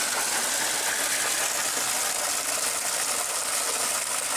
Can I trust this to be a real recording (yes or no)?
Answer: yes